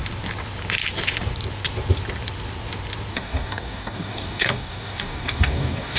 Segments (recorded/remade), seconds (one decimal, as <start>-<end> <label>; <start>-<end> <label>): 0.0-3.1 recorded; 3.1-6.0 remade